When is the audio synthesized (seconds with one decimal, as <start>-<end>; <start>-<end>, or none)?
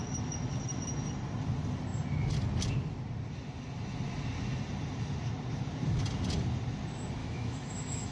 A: 7.2-8.1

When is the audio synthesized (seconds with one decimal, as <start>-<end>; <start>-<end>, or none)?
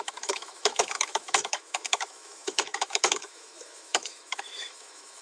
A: 0.0-5.2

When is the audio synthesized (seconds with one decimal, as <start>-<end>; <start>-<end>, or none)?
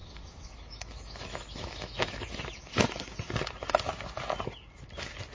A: 0.0-3.2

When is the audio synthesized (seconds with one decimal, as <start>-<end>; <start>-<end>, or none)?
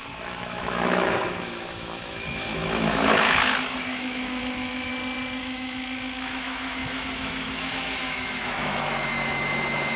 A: 0.0-4.9; 5.4-10.0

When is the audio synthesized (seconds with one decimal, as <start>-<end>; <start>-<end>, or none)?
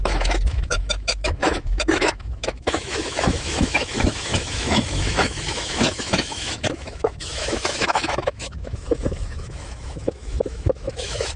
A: 0.0-11.4